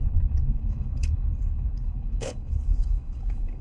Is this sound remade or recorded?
remade